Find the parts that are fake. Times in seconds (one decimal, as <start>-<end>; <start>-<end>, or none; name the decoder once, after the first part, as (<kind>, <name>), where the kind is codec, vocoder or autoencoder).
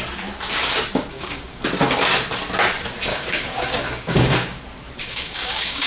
1.1-1.6 (codec, DAC); 3.1-4.6; 5.0-5.9